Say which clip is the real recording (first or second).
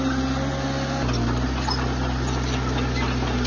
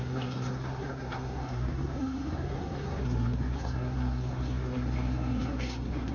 first